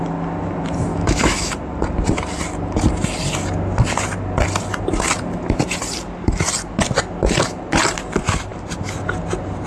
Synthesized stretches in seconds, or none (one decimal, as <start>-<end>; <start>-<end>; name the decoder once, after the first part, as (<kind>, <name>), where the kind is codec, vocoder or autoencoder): 0.9-1.5 (autoencoder, DAC-VAE)